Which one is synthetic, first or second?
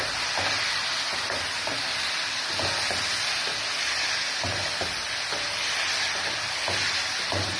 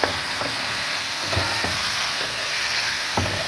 second